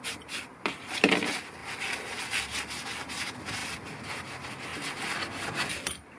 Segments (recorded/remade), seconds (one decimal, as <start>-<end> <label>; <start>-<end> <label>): 0.0-6.2 recorded